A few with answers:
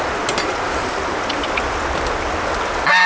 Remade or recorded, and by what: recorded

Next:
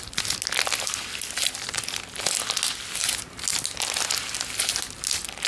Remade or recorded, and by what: recorded